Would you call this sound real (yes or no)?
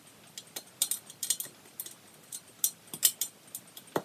yes